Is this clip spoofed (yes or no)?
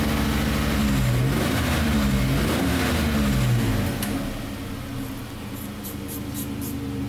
no